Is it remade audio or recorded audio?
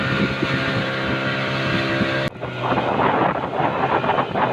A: recorded